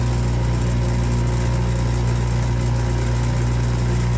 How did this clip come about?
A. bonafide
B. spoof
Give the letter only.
A